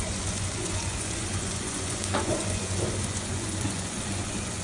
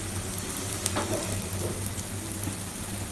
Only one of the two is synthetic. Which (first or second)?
first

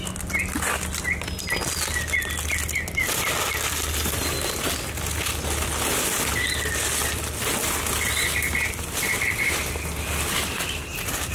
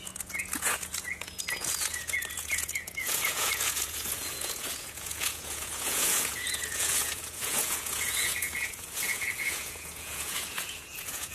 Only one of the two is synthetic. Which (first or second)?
second